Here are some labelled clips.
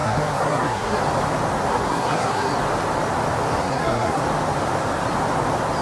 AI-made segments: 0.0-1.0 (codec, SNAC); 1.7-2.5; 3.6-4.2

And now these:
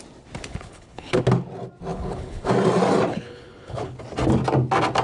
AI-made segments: 0.5-1.2 (codec, HILCodec); 1.9-2.5; 3.1-4.0

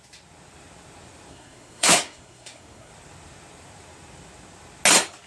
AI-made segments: 1.3-2.9 (codec, SNAC)